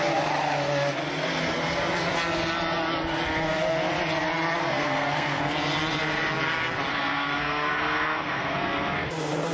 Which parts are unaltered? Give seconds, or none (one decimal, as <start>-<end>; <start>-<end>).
0.0-4.6; 5.4-6.9; 9.1-9.5